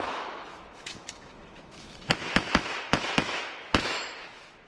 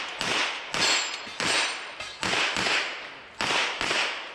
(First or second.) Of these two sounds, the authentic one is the second